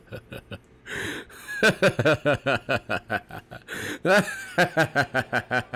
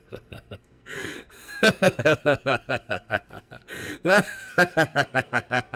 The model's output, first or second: second